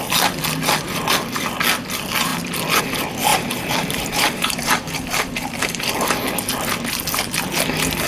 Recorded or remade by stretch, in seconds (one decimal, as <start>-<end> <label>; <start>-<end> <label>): 0.0-3.3 recorded; 3.3-5.8 remade; 5.8-8.1 recorded